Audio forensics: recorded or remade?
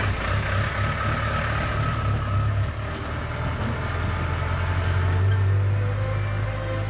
recorded